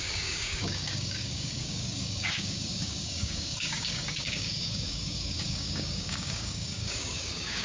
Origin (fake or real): fake